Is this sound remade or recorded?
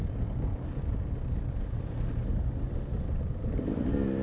recorded